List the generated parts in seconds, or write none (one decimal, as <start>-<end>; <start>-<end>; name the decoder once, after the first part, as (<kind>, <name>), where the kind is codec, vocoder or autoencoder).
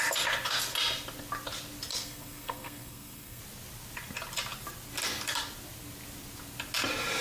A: 1.9-3.4 (codec, SNAC)